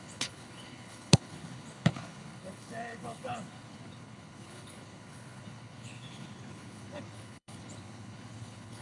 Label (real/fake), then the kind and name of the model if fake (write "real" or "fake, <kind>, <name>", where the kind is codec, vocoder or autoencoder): fake, codec, HILCodec